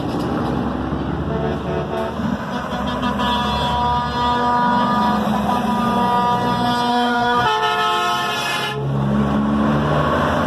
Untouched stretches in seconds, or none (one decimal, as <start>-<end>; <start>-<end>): 0.0-6.9; 7.4-10.5